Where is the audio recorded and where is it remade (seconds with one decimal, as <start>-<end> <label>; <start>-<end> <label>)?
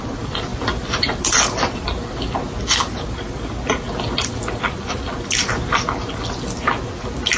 0.0-7.4 recorded